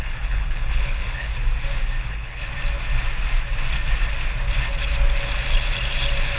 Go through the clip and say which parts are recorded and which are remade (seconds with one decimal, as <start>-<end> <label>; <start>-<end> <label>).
0.0-1.3 remade; 1.3-2.0 recorded; 2.0-2.5 remade; 2.5-6.4 recorded